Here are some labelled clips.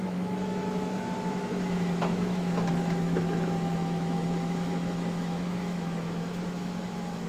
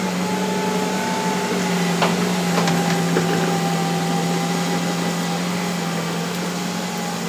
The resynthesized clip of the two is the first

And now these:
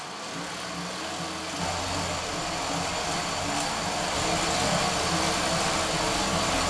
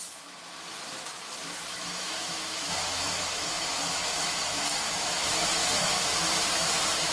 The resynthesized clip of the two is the second